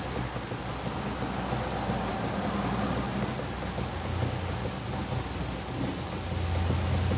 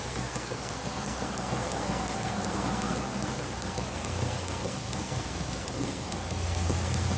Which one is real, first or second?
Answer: first